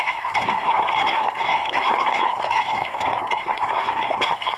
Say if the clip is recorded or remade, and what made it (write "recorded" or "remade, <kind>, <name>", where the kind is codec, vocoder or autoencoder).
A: remade, codec, SNAC